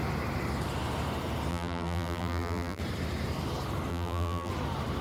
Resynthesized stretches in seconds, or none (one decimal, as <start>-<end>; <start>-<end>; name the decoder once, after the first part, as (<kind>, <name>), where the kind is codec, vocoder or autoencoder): 1.5-2.8 (vocoder, BigVGAN v2); 3.9-4.5